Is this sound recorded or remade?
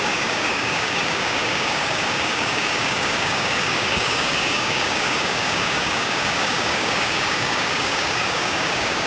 remade